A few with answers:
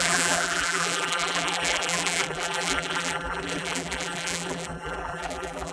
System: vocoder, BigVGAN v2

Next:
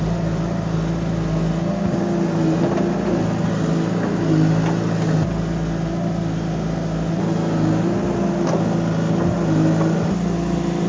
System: none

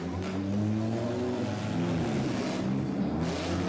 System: none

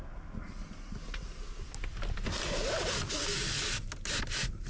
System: none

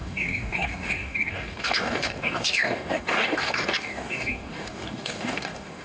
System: codec, DAC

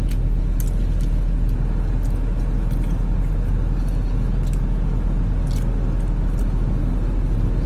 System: none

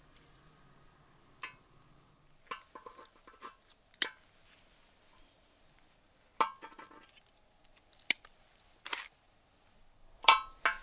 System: none